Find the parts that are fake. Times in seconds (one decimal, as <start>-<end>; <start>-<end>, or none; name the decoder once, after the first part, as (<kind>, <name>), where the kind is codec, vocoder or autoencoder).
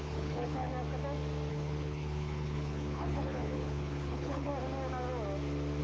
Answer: 0.0-0.7 (codec, HILCodec); 1.5-4.5